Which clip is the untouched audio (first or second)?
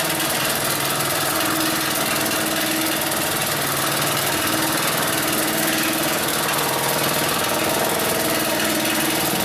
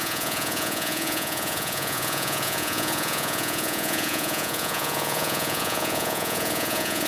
first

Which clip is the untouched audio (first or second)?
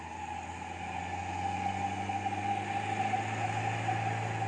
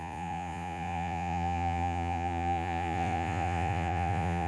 first